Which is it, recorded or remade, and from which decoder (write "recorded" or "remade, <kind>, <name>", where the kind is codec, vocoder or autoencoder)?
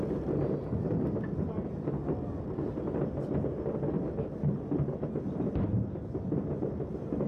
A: recorded